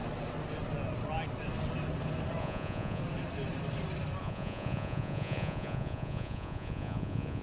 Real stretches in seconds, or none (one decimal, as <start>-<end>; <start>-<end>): 0.0-2.4; 3.0-4.2